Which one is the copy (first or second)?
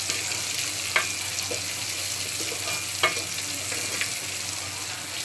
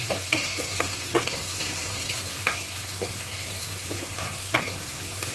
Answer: second